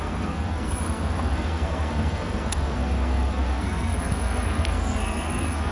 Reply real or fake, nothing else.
fake